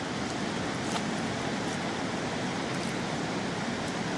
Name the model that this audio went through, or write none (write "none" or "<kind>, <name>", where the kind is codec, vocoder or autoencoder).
none